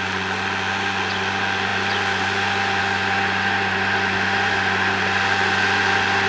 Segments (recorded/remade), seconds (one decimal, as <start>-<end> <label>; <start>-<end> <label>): 0.0-6.3 recorded